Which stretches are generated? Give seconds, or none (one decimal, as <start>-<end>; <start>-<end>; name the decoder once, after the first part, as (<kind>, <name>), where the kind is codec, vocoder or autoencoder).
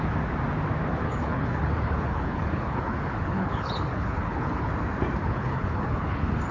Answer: 0.8-4.7 (codec, HILCodec); 5.2-6.5